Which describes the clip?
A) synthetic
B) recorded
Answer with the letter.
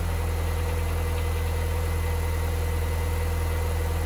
B